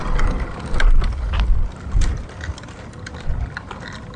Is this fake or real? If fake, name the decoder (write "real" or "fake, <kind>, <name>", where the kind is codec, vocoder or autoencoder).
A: real